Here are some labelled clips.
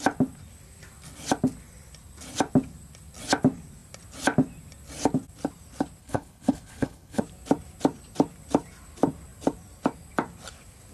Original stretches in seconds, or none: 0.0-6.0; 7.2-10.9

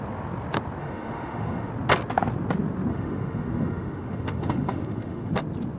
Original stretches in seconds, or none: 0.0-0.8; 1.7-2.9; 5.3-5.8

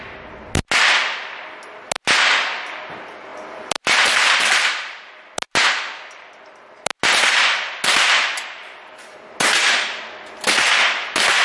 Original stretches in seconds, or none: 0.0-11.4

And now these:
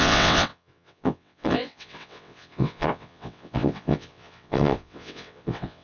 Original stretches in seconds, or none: none

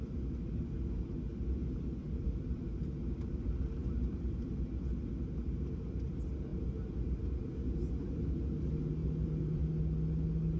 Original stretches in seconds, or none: 0.0-3.8; 4.6-9.0; 9.6-10.6